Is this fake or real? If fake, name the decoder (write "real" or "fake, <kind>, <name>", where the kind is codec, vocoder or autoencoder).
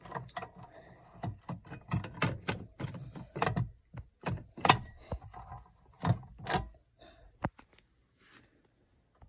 real